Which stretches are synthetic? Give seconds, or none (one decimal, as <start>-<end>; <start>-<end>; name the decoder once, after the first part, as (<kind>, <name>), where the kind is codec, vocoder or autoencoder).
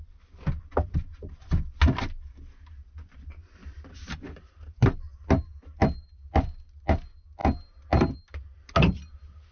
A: 3.6-4.8 (vocoder, BigVGAN v2)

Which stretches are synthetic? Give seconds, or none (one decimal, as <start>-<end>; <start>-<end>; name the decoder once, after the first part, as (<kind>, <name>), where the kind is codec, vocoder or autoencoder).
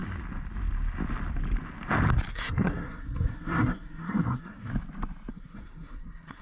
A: 2.3-4.7 (codec, SNAC); 5.3-6.4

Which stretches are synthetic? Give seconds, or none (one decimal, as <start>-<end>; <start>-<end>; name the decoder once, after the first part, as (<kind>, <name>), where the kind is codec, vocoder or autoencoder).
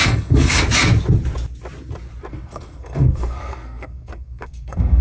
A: 0.0-0.6 (codec, SNAC); 2.3-5.0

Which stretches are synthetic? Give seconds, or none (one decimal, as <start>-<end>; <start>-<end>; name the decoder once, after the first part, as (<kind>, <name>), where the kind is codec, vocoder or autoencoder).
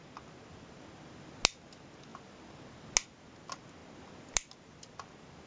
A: none